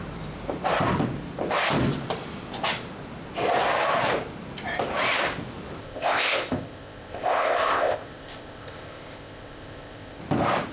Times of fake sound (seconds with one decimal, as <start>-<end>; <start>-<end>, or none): 5.8-10.2